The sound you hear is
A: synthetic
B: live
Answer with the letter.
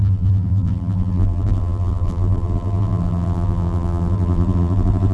A